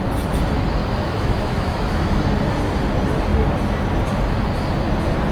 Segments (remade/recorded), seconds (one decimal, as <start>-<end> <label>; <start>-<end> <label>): 0.0-0.8 recorded; 0.8-2.2 remade; 2.2-5.3 recorded